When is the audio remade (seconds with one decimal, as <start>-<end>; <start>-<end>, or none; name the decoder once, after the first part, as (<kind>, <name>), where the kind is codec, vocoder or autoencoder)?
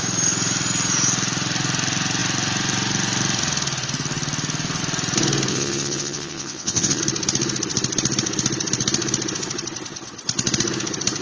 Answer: 5.5-7.0 (vocoder, WaveNeXt)